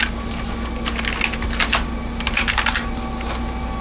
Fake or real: real